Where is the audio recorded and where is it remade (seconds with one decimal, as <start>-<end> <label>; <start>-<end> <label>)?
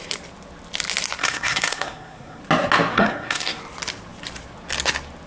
0.0-1.2 recorded; 1.2-2.4 remade; 2.4-2.9 recorded; 2.9-3.6 remade; 3.6-5.3 recorded